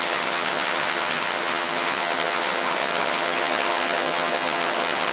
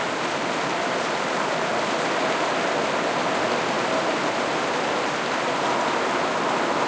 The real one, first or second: second